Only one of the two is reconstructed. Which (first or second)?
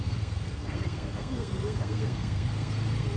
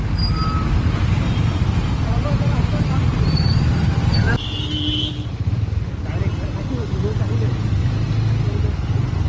first